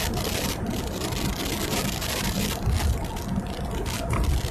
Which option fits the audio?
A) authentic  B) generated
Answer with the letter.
B